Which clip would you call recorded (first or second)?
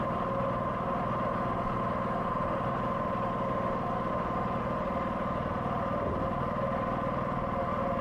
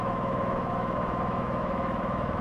first